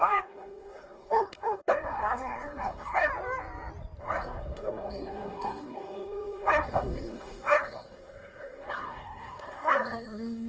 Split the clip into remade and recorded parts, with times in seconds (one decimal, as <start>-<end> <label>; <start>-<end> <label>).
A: 0.0-3.1 remade; 3.1-4.0 recorded; 4.0-10.5 remade